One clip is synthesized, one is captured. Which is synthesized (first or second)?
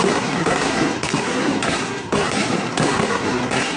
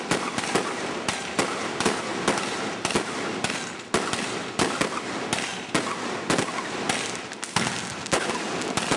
first